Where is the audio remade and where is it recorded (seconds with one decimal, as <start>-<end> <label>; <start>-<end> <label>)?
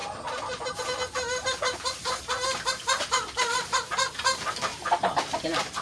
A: 0.0-5.8 recorded